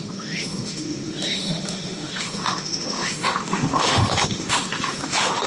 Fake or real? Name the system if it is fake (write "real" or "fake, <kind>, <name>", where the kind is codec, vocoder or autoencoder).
fake, autoencoder, DAC-VAE